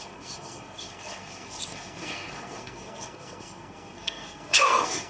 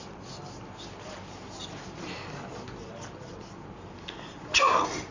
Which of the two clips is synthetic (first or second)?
first